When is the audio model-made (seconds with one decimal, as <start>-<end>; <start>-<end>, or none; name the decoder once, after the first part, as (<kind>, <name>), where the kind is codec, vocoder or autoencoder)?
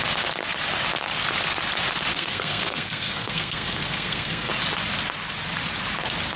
2.1-4.5 (codec, SNAC)